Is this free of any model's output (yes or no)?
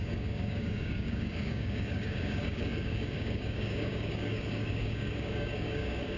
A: no